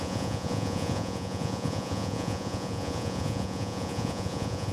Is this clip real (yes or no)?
no